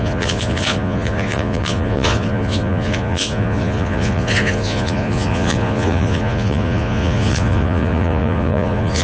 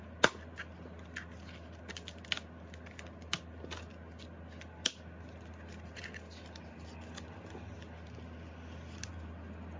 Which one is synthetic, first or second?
first